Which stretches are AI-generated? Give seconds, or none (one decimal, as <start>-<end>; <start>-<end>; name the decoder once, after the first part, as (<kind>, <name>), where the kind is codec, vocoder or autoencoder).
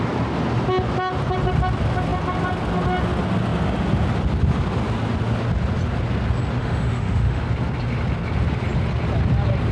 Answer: 6.6-7.4 (autoencoder, DAC-VAE)